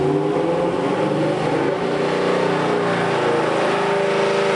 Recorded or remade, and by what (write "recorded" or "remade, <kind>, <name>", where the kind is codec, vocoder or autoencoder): recorded